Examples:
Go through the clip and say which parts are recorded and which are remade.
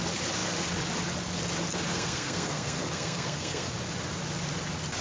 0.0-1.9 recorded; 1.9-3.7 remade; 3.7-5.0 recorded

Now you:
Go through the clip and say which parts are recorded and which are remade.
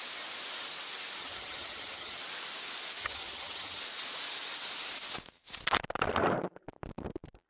0.0-1.2 recorded; 1.2-2.2 remade; 2.2-3.0 recorded; 3.0-3.8 remade; 3.8-7.5 recorded